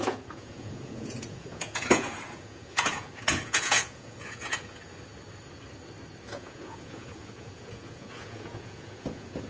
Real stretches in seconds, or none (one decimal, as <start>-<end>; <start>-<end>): 5.1-6.2